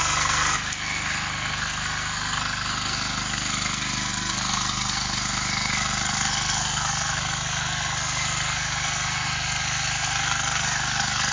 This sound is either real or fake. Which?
fake